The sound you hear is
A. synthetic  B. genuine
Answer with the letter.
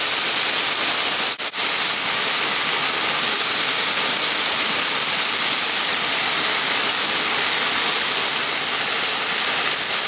B